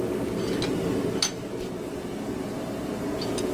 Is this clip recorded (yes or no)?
yes